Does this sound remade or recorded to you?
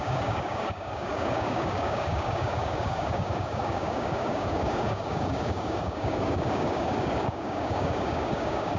remade